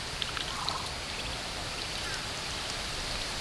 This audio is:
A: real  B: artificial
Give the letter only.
A